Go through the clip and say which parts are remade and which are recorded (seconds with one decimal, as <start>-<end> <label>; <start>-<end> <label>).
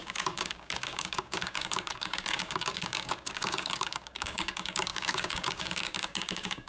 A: 0.0-6.7 remade